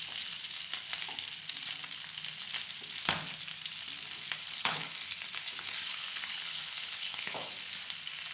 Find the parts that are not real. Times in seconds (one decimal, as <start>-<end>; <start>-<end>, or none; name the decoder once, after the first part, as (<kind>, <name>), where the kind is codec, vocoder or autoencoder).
4.4-4.9 (codec, HILCodec); 5.9-7.5